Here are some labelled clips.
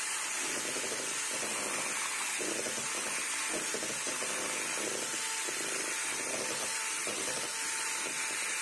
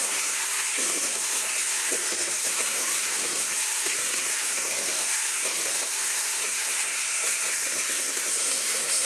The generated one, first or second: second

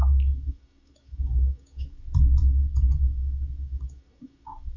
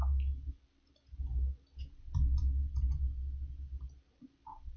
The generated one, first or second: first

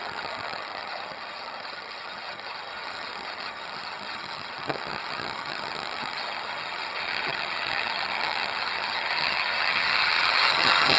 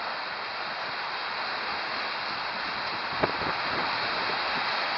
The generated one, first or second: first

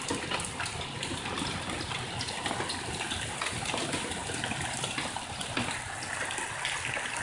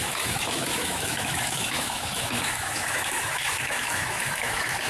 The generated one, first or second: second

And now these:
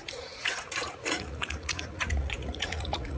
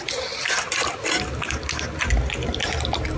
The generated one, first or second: first